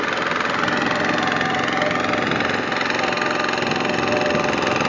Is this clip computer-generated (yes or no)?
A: no